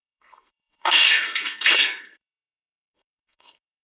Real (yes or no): no